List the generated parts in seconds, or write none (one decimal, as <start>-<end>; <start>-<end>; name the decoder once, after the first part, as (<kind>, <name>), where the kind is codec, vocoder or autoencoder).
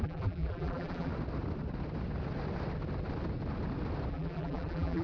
0.0-1.1 (vocoder, BigVGAN v2); 4.1-5.0